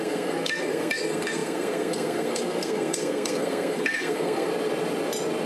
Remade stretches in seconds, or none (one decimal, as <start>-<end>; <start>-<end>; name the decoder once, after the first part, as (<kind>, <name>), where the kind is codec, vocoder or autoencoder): 0.0-4.5 (codec, SNAC)